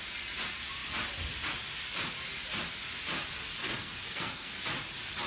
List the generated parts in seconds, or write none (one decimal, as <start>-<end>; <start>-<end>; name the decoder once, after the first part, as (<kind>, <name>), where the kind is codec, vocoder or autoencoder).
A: 3.6-4.6 (codec, SNAC)

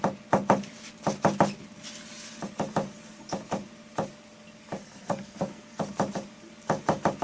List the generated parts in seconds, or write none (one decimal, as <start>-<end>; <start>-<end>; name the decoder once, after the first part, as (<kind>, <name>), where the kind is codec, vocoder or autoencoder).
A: 4.8-5.8 (codec, SNAC)

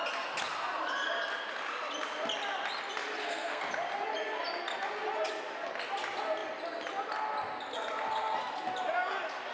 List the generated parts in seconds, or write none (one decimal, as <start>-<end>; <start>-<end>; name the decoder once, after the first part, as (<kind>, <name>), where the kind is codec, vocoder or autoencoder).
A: 3.2-3.7 (codec, SNAC)

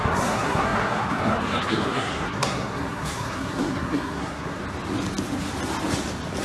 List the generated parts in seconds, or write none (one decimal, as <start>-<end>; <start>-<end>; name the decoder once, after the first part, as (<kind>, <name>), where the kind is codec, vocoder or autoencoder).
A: 0.0-4.6 (codec, SNAC)

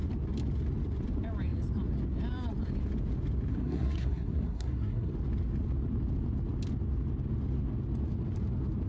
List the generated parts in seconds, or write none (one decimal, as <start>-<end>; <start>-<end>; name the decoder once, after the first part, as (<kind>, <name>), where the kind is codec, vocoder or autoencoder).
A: 3.5-5.1 (codec, SNAC)

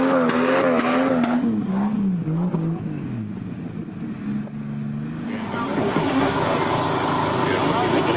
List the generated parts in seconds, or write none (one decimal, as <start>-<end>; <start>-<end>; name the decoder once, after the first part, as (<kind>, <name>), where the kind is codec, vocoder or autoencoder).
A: 5.8-6.4 (codec, SNAC)

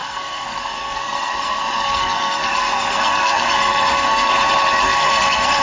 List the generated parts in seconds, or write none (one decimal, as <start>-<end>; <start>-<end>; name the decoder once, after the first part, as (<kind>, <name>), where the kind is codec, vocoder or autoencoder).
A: 0.0-4.3 (codec, SNAC); 4.8-5.6